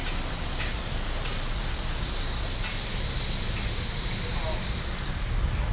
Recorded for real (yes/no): yes